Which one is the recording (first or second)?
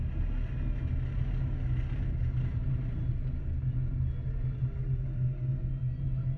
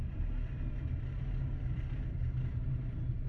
first